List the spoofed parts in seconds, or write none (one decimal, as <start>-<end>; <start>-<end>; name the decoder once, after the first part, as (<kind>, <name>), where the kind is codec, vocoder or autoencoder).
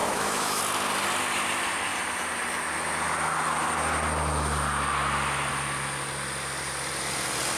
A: 0.0-0.6 (autoencoder, DAC-VAE)